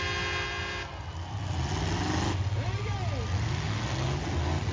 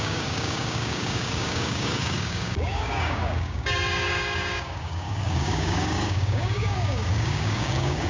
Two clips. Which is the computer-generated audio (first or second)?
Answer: second